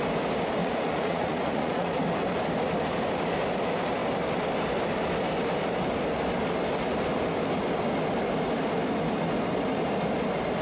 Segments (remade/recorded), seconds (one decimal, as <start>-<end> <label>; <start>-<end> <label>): 0.0-0.6 recorded; 0.6-1.9 remade; 1.9-10.6 recorded